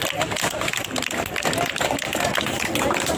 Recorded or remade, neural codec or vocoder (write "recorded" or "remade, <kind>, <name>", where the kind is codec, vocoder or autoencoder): remade, vocoder, BigVGAN v2